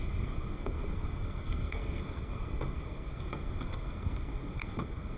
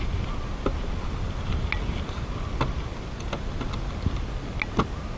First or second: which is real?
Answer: second